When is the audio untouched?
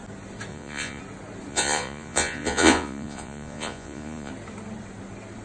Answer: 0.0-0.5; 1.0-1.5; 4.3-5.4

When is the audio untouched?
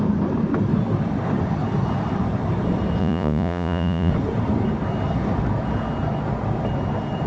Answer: 0.0-3.0; 4.1-7.3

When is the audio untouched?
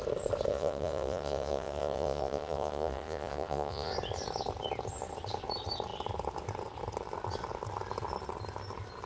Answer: 0.0-0.5; 3.9-9.1